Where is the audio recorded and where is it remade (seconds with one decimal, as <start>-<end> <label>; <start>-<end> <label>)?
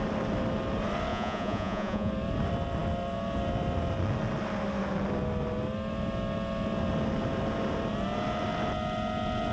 0.0-1.1 recorded; 1.1-2.1 remade; 2.1-9.5 recorded